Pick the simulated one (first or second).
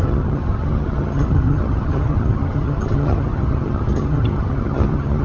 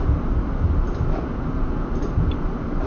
first